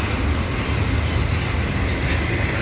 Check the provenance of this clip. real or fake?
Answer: real